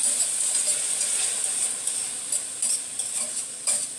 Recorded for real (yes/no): yes